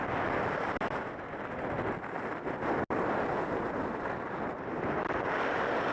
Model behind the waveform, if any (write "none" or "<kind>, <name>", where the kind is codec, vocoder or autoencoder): none